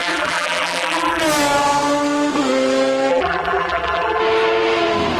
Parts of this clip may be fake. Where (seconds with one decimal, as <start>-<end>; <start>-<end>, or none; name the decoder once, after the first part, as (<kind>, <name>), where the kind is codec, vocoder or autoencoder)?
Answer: 0.0-1.2 (vocoder, BigVGAN v2); 3.1-4.2